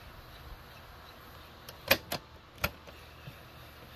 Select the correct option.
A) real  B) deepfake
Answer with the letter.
A